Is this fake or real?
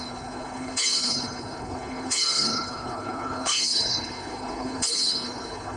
fake